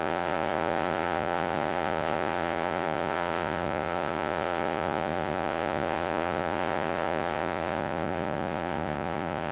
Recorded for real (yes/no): no